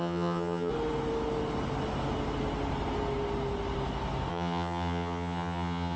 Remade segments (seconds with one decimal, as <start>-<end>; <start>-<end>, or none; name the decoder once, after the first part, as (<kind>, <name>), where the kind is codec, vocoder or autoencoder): 0.0-0.7 (vocoder, HiFi-GAN); 4.3-6.0